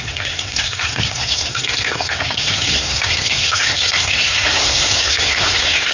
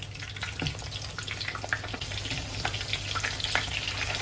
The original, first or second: second